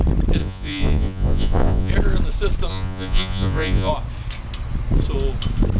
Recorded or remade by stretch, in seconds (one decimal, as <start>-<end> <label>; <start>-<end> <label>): 0.0-0.4 recorded; 0.4-1.9 remade; 1.9-2.7 recorded; 2.7-3.9 remade; 3.9-5.8 recorded